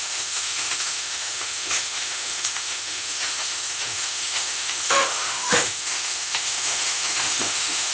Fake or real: fake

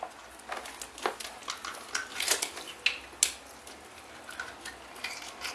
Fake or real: real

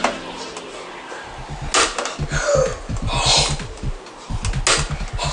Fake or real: real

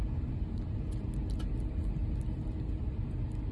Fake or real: real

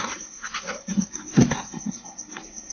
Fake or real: fake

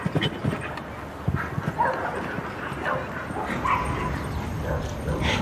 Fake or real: real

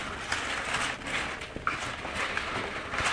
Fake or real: real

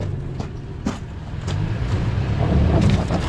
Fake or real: real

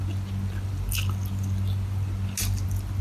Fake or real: real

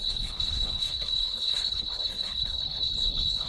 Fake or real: fake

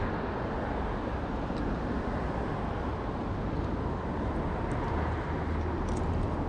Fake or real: real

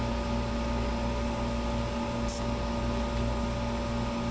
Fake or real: real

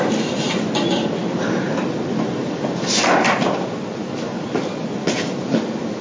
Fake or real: real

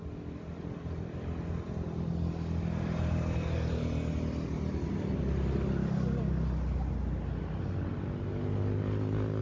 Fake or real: real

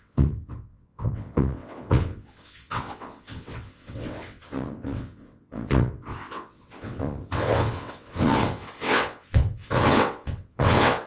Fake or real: fake